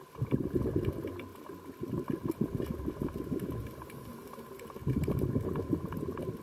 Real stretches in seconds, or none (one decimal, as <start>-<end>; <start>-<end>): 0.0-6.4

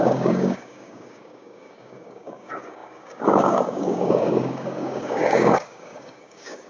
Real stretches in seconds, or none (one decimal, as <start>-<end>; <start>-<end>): none

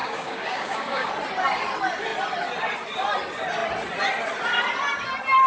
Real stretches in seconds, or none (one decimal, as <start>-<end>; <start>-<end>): 1.1-5.5

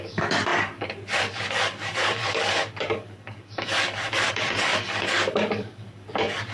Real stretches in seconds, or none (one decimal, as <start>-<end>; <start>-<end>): none